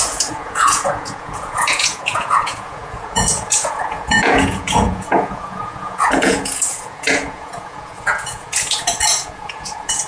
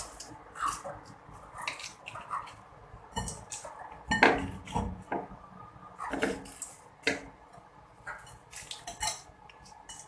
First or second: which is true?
second